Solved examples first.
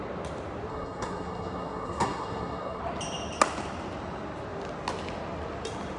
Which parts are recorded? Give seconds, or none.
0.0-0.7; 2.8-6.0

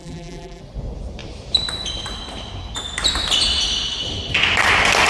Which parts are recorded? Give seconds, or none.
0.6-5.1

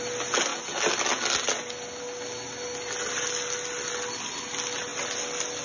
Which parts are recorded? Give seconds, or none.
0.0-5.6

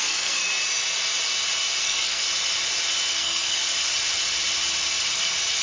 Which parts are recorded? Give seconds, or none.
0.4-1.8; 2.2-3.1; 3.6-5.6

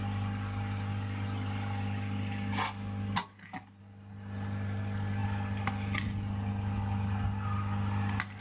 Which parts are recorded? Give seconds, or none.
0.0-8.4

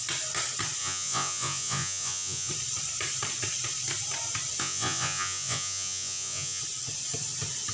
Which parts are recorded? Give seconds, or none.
0.0-0.8; 2.5-4.6; 6.6-7.7